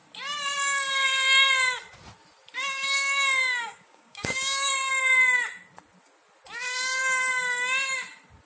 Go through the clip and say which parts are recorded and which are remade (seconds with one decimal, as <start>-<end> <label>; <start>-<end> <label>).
0.0-3.6 recorded; 3.6-4.7 remade; 4.7-8.5 recorded